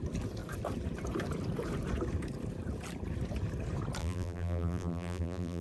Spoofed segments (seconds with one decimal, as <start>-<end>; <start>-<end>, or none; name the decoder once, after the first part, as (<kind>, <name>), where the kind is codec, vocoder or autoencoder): 4.0-5.6 (vocoder, BigVGAN v2)